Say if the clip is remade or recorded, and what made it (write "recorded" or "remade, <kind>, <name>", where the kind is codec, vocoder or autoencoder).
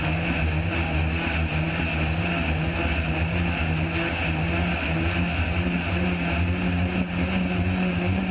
recorded